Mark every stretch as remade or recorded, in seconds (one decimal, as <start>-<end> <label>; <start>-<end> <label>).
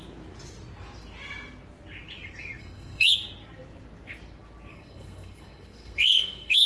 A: 0.0-2.6 recorded; 2.6-3.1 remade; 3.1-4.7 recorded; 4.7-6.7 remade